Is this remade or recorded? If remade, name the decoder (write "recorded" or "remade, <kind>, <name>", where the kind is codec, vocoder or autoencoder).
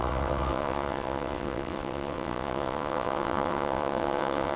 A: remade, vocoder, WaveNeXt